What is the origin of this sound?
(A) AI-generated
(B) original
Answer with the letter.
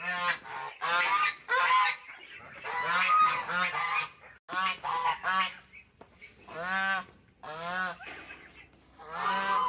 B